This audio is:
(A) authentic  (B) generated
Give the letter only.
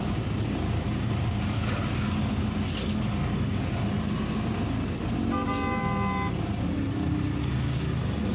A